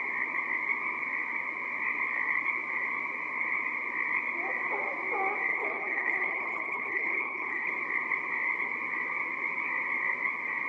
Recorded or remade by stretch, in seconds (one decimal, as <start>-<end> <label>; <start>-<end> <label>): 0.0-5.5 recorded; 5.5-7.7 remade; 7.7-10.7 recorded